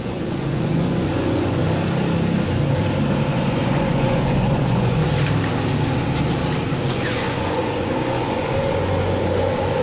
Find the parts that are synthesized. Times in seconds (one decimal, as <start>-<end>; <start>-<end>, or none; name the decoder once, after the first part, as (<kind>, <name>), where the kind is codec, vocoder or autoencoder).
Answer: 0.0-1.6 (vocoder, Vocos); 3.3-5.0; 6.9-9.8